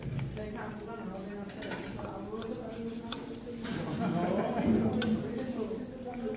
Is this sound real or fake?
real